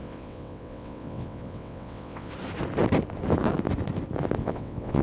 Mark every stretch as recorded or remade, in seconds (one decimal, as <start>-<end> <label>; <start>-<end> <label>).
0.0-2.3 remade; 2.3-4.4 recorded; 4.4-5.0 remade

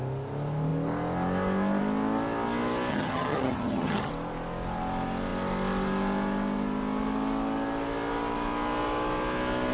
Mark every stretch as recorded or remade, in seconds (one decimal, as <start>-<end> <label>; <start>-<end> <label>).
0.0-2.9 recorded; 2.9-4.1 remade; 4.1-9.7 recorded